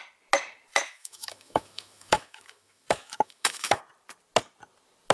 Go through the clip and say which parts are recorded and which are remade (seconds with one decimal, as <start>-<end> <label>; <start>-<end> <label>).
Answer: 0.0-0.7 recorded; 0.7-3.8 remade; 3.8-5.1 recorded